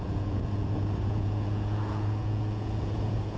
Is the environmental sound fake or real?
fake